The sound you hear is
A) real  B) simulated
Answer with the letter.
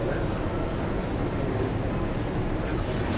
A